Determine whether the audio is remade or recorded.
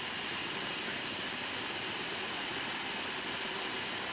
remade